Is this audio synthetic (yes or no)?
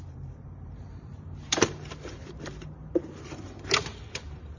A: yes